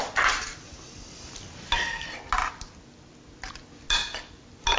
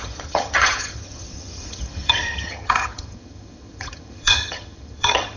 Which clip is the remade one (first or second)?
second